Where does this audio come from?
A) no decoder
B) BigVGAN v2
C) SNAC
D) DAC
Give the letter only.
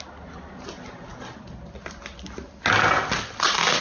A